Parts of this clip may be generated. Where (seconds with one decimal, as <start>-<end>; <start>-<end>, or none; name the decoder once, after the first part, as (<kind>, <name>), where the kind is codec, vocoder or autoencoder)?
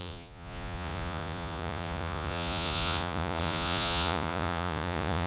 0.0-5.3 (vocoder, Vocos)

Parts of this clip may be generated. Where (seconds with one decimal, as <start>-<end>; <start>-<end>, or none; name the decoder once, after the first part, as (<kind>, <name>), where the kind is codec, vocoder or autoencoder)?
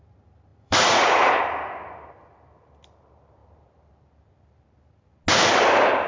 0.5-1.4 (vocoder, Vocos)